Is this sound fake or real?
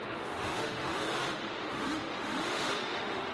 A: fake